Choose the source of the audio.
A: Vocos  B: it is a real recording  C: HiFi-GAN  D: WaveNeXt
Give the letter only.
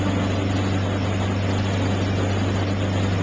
B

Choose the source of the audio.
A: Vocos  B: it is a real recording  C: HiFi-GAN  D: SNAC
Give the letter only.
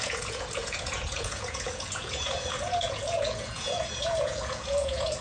A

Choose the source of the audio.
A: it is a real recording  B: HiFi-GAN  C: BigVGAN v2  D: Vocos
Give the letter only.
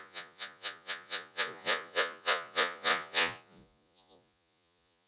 D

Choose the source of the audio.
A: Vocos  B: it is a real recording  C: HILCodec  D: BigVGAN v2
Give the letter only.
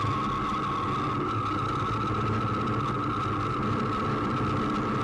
B